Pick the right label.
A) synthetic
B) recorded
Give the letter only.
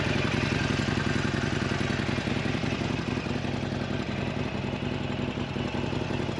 B